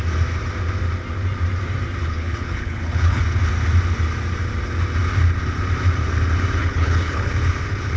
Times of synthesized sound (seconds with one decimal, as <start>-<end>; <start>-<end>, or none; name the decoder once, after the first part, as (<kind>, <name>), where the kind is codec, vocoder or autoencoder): 2.0-3.2 (codec, HILCodec); 6.6-7.3